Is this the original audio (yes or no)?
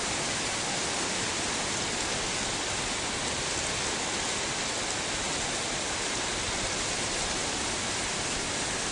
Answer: yes